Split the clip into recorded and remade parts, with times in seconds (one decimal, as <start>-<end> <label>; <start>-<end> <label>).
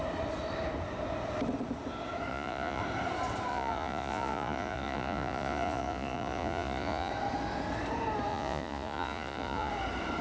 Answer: 0.0-2.3 recorded; 2.3-2.8 remade; 2.8-3.5 recorded; 3.5-7.1 remade; 7.1-8.3 recorded; 8.3-9.7 remade; 9.7-10.2 recorded